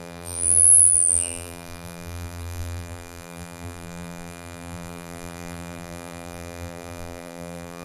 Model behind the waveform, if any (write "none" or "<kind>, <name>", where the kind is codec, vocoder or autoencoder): vocoder, BigVGAN v2